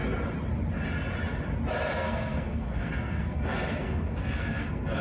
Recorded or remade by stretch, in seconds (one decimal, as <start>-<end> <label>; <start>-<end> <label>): 0.0-1.9 recorded; 1.9-5.0 remade